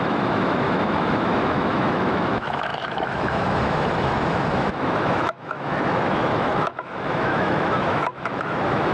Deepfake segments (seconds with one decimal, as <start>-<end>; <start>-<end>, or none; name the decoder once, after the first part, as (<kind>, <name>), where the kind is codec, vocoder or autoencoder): 0.0-8.9 (autoencoder, DAC-VAE)